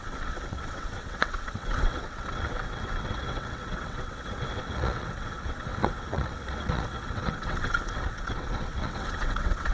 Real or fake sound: fake